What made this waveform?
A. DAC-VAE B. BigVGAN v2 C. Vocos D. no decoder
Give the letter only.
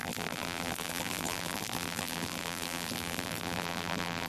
B